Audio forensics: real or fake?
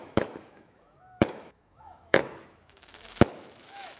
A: fake